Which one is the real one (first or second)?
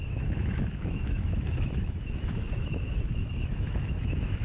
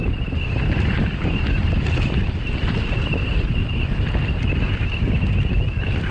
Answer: second